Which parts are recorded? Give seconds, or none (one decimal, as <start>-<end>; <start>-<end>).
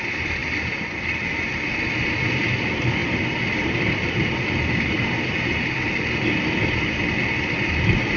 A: 0.0-8.2